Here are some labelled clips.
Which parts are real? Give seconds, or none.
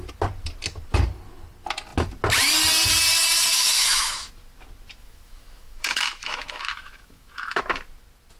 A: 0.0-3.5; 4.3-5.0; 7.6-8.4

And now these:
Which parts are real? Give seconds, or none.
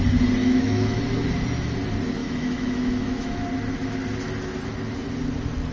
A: 0.0-0.4; 1.0-2.2; 3.4-5.7